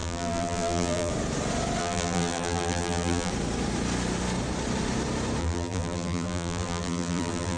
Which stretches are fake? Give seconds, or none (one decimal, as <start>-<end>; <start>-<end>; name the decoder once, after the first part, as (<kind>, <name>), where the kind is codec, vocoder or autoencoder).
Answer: 0.0-1.1 (vocoder, BigVGAN v2); 1.8-3.3; 5.4-7.6